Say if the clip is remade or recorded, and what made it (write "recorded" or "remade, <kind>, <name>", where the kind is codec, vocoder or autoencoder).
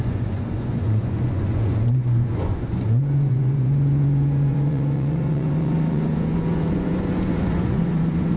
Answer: remade, vocoder, Vocos